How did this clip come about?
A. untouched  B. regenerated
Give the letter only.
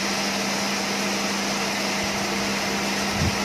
A